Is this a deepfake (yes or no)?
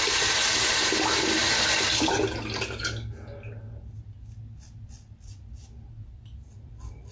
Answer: no